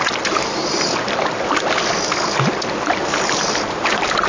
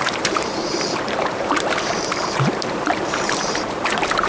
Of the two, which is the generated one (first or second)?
second